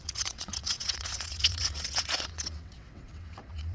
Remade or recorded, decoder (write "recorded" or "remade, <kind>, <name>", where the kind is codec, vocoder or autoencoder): remade, vocoder, WaveNeXt